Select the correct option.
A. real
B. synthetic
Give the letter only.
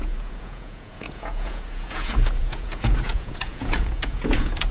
B